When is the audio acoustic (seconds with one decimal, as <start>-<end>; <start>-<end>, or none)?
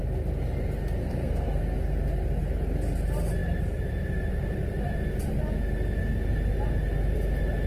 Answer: 0.0-1.0; 1.6-7.7